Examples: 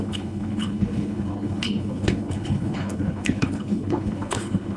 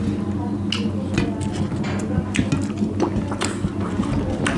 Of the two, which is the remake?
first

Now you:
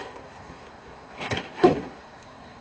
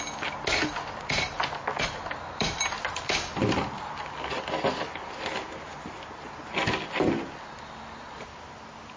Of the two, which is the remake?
first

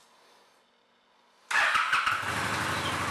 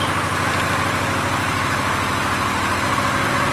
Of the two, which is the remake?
second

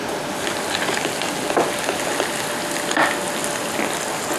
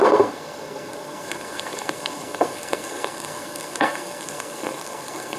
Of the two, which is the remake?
second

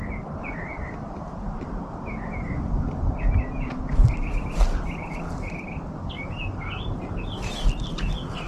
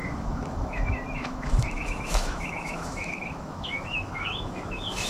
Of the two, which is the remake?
second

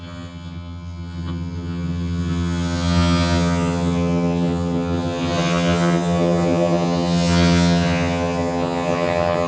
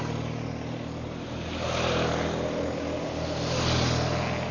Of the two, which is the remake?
first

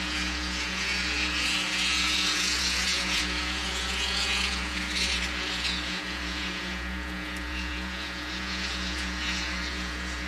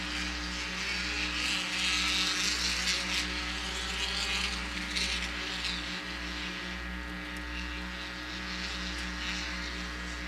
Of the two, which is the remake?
first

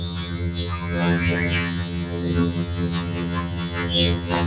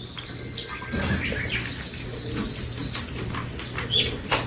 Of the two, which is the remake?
first